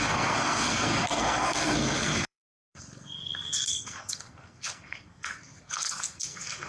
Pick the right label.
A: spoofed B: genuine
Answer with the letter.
A